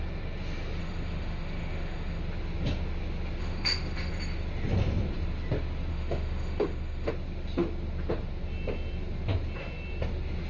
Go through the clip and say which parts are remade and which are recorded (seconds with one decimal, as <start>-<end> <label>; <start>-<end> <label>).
0.0-0.8 recorded; 0.8-2.2 remade; 2.2-3.4 recorded; 3.4-4.1 remade; 4.1-5.9 recorded; 5.9-7.1 remade; 7.1-10.5 recorded